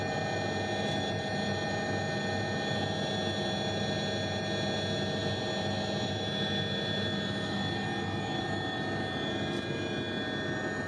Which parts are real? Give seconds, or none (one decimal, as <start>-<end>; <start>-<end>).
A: 0.0-10.9